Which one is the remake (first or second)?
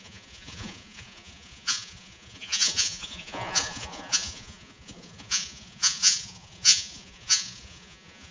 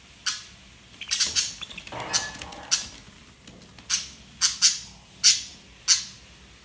first